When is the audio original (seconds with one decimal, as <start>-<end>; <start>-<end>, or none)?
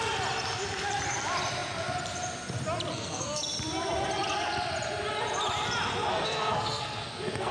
0.0-2.9; 3.4-6.1